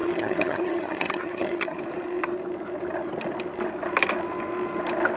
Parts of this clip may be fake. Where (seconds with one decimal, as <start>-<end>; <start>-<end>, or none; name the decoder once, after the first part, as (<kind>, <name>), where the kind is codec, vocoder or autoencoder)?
0.0-1.8 (vocoder, HiFi-GAN)